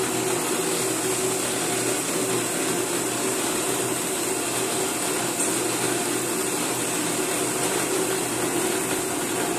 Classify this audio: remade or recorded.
recorded